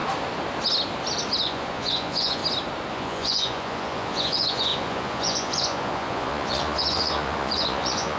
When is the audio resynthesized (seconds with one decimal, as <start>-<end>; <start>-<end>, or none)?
1.4-2.4; 2.9-8.2